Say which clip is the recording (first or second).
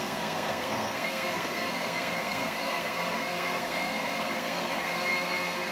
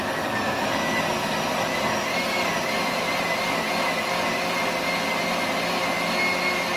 second